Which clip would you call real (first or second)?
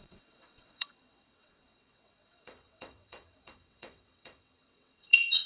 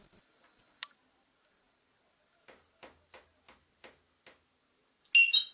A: second